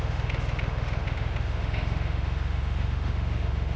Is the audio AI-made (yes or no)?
yes